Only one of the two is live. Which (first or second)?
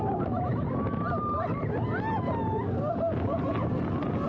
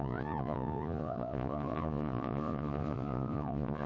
first